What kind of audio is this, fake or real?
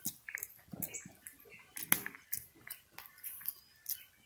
real